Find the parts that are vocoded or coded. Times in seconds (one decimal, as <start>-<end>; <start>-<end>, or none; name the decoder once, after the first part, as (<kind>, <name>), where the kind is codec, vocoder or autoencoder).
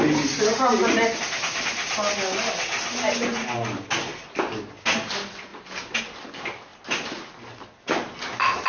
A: none